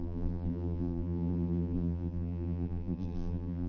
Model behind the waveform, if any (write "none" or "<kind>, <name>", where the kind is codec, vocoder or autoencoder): vocoder, BigVGAN v2